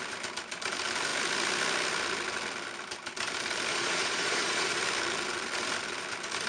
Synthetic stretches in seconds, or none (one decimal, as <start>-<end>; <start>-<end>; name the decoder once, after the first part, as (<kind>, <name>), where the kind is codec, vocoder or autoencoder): 3.7-4.8 (vocoder, Vocos)